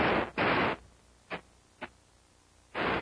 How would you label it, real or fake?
real